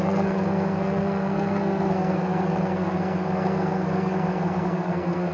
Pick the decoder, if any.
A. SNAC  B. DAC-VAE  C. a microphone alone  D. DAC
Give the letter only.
A